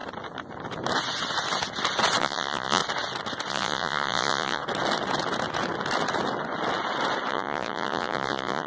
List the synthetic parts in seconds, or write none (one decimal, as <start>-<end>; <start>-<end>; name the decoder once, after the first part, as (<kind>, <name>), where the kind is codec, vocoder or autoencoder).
2.2-2.8 (vocoder, Vocos); 3.5-4.6; 7.3-8.7